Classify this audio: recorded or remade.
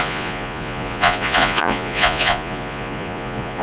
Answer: remade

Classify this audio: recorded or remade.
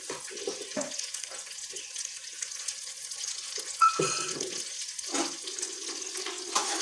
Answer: remade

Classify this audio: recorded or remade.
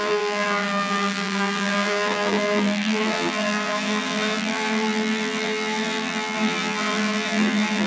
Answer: remade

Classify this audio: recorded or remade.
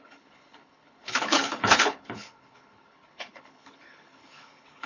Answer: remade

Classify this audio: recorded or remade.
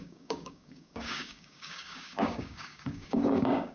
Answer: remade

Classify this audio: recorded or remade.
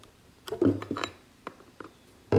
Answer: remade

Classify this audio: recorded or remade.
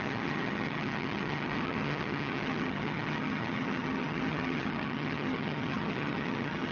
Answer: remade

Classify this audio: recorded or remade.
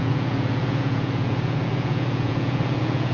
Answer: remade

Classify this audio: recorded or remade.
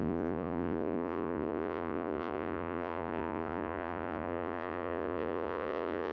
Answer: remade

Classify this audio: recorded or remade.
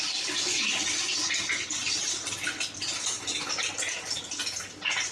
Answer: recorded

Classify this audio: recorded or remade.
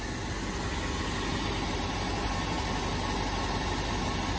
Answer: recorded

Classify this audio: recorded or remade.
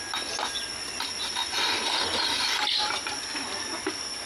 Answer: recorded